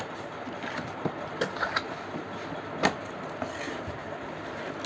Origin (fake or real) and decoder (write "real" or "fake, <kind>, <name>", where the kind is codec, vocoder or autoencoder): real